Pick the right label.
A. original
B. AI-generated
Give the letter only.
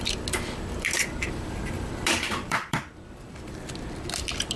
B